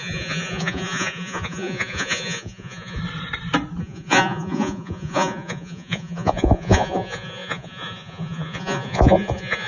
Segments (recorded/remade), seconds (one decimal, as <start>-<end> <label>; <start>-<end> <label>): 0.0-3.0 remade; 3.0-3.8 recorded; 3.8-9.7 remade